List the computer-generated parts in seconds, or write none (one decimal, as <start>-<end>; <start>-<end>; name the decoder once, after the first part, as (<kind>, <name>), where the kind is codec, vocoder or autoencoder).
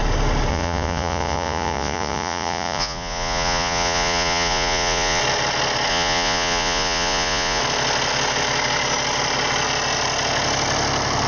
0.5-5.2 (vocoder, Vocos); 5.9-7.6